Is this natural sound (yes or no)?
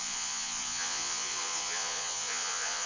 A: no